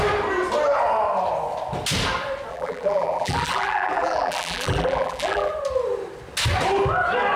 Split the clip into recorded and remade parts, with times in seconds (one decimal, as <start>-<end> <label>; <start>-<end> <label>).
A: 0.0-2.5 recorded; 2.5-5.5 remade; 5.5-7.4 recorded